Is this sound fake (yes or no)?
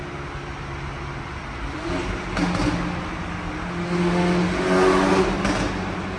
no